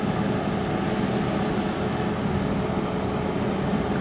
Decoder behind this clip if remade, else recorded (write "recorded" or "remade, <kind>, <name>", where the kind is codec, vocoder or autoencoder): recorded